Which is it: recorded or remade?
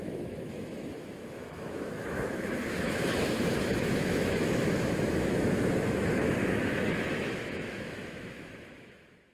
remade